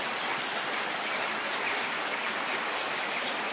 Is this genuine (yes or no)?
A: yes